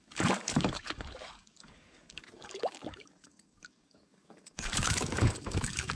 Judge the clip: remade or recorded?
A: remade